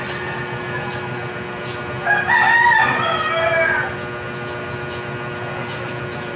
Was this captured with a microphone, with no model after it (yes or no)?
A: yes